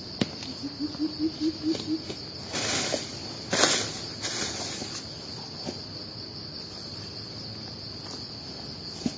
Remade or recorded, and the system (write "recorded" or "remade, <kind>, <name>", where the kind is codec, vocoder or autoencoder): recorded